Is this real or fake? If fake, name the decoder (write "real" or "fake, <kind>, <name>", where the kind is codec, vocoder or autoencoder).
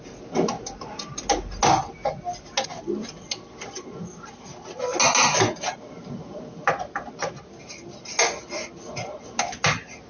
real